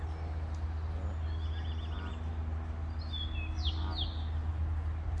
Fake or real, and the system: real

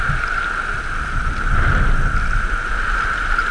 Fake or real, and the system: real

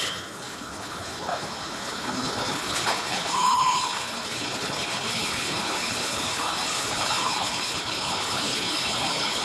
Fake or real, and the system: fake, codec, HILCodec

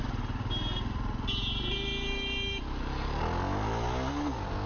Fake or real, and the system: real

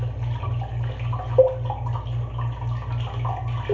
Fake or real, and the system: real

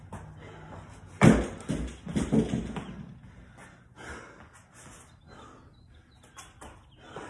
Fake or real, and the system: real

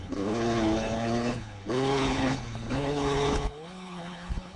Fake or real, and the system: fake, codec, HILCodec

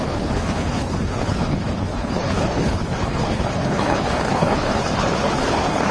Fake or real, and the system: fake, codec, HILCodec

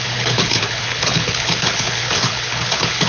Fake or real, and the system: fake, codec, HILCodec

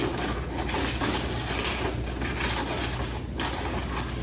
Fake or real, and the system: real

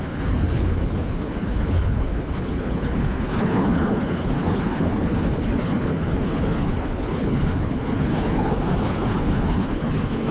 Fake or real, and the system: fake, codec, HILCodec